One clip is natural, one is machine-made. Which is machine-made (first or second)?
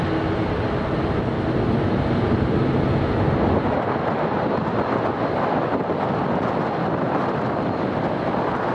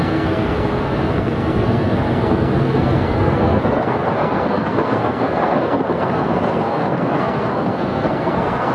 second